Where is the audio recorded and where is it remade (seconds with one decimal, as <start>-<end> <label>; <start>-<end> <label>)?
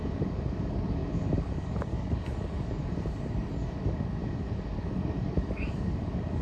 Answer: 0.0-6.4 remade